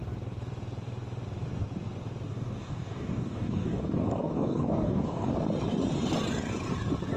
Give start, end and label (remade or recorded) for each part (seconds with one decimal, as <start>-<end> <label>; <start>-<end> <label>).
0.0-2.3 recorded; 2.3-5.3 remade; 5.3-7.2 recorded